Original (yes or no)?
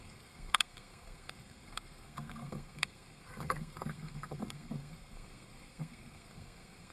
no